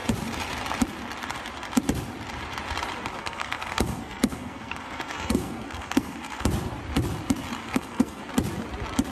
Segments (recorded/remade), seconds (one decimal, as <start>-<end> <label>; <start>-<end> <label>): 0.0-3.2 recorded; 3.2-6.5 remade; 6.5-7.6 recorded; 7.6-8.3 remade; 8.3-9.1 recorded